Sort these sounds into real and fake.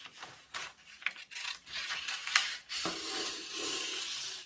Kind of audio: real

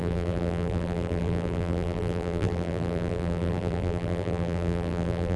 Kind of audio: fake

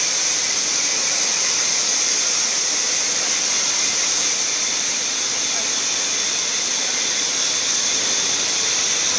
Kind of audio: fake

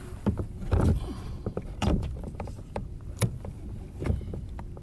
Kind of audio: fake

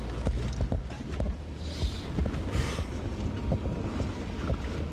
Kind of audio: real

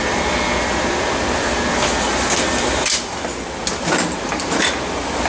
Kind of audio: fake